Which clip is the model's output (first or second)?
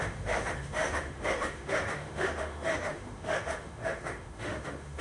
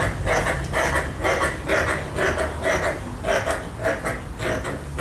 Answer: first